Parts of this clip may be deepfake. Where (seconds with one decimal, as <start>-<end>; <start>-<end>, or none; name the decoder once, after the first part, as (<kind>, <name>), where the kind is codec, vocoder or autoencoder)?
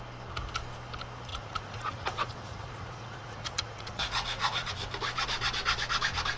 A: 1.3-4.7 (vocoder, Vocos)